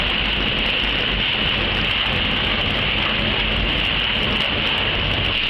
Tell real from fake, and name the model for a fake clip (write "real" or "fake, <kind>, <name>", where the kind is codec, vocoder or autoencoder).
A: real